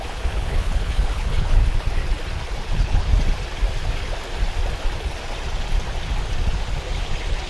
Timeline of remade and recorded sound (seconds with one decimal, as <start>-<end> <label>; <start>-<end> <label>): 0.0-1.6 remade; 1.6-2.7 recorded; 2.7-3.1 remade; 3.1-7.5 recorded